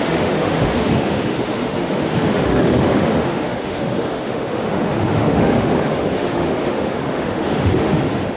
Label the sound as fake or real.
fake